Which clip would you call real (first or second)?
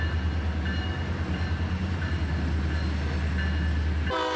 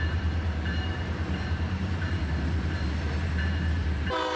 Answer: first